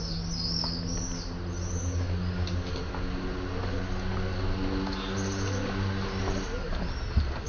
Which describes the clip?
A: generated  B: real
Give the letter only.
B